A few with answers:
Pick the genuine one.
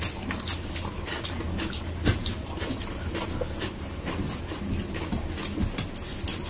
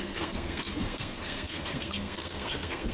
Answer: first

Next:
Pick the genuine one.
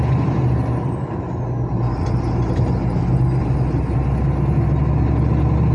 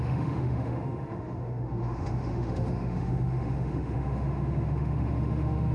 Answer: first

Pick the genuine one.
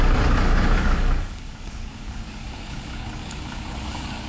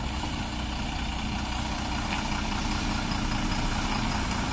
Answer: second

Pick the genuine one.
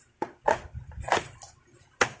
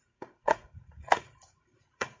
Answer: first